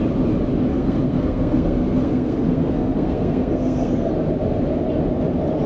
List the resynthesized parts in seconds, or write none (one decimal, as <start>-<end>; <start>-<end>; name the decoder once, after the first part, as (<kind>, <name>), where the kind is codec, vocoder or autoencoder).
0.7-4.1 (codec, SNAC)